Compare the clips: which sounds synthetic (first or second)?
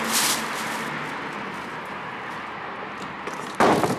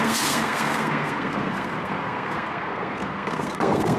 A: second